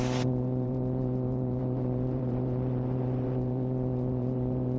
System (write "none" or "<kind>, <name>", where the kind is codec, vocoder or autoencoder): vocoder, BigVGAN v2